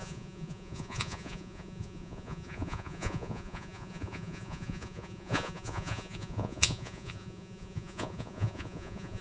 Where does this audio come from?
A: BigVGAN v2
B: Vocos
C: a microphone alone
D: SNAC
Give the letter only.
B